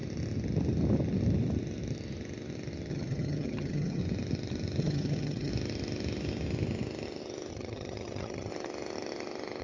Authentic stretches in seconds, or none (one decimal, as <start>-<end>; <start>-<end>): 0.0-2.9; 4.0-4.8; 5.5-7.5; 8.5-9.6